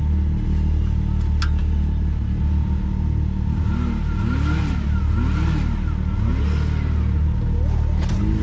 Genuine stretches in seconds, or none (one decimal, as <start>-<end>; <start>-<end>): 0.0-8.4